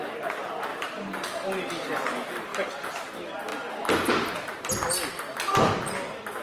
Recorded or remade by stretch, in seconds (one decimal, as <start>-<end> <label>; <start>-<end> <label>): 0.0-0.7 recorded; 0.7-1.7 remade; 1.7-6.4 recorded